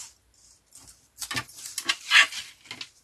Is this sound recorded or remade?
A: recorded